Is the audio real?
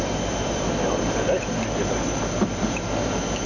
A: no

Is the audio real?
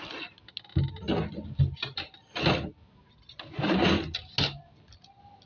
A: yes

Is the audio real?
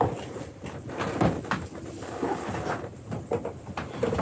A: yes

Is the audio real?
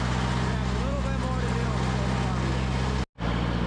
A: yes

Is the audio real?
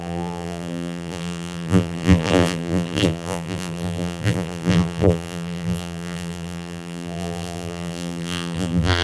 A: no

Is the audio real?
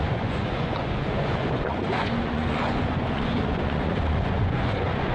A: no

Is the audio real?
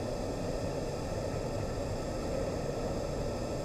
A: yes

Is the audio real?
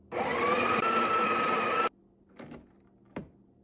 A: yes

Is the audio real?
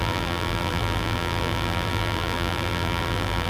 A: no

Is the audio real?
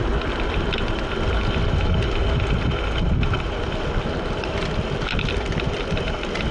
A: yes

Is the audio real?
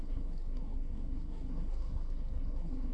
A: no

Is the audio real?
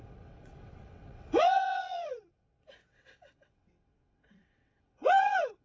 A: no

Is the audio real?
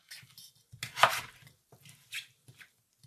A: yes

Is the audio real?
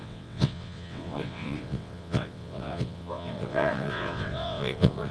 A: no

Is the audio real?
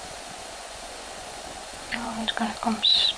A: no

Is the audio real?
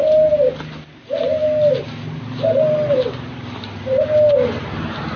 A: yes